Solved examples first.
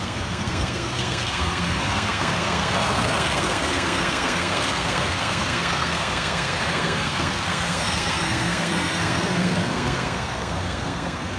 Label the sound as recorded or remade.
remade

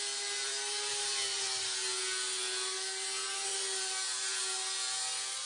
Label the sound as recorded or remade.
recorded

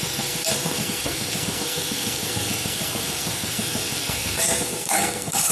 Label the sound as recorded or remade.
remade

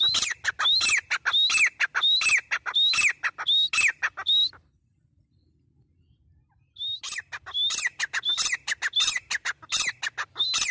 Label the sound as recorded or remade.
recorded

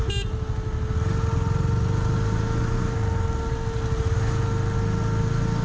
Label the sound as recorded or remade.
recorded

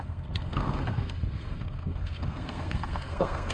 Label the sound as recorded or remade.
remade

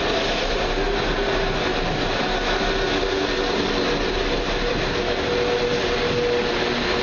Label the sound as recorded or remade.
recorded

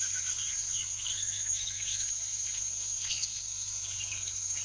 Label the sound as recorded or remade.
remade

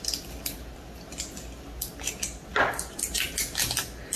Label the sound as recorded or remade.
recorded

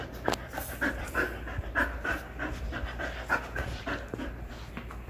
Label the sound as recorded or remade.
recorded